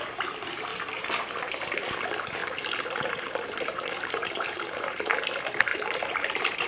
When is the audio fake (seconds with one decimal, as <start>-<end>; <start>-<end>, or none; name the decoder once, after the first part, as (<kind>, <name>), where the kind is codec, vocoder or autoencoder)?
0.7-1.2 (vocoder, BigVGAN v2); 2.4-5.1; 5.7-6.7